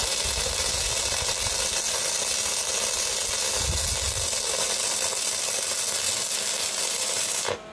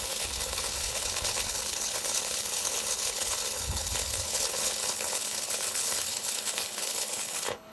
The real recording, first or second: first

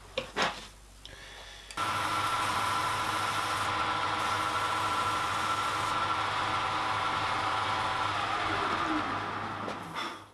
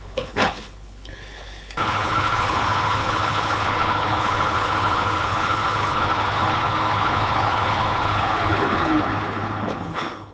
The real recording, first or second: first